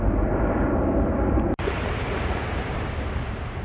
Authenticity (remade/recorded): remade